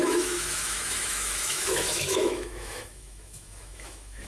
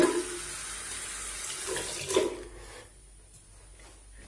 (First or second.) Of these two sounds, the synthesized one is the first